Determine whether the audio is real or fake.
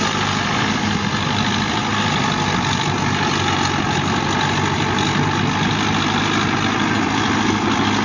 real